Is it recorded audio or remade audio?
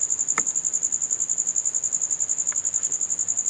recorded